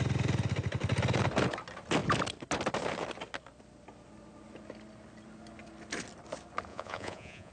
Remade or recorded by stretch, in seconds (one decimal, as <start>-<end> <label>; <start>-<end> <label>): 0.0-6.7 recorded; 6.7-7.5 remade